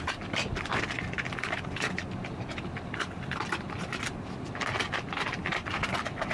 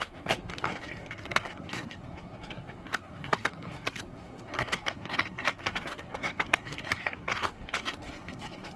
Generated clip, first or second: second